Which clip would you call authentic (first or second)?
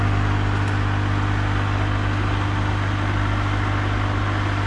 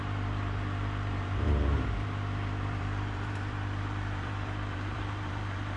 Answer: first